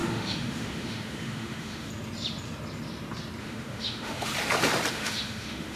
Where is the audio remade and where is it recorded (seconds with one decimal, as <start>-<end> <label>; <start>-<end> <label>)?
0.0-1.9 remade; 1.9-3.4 recorded; 3.4-4.3 remade; 4.3-4.9 recorded; 4.9-5.8 remade